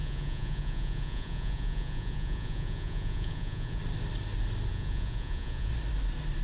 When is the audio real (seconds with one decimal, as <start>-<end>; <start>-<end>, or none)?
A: 3.8-4.7; 5.7-6.4